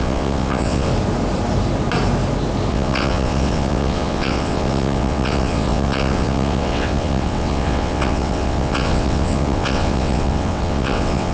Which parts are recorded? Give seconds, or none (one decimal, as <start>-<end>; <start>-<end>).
0.9-2.7